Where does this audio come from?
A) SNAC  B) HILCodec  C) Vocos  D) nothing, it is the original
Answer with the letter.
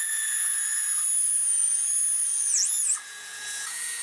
C